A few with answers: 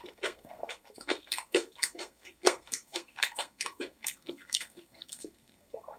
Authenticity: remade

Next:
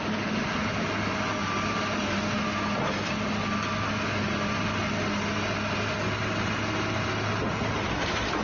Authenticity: recorded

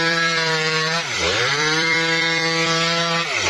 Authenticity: remade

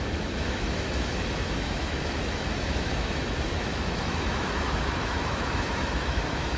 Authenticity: remade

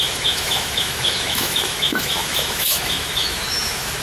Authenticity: remade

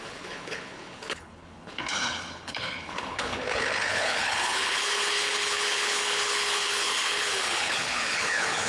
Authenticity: remade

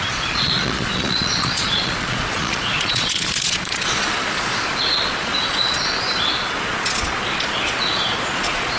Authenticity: remade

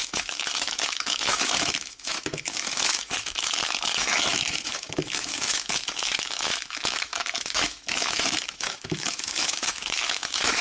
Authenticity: remade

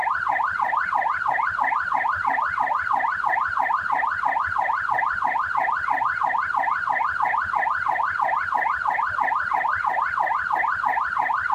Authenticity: recorded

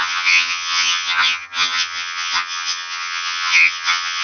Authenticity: remade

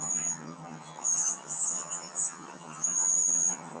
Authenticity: remade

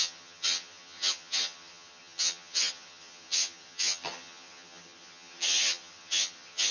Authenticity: remade